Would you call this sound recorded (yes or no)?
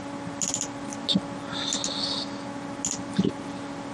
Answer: yes